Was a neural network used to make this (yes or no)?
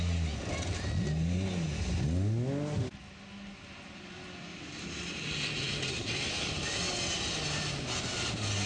no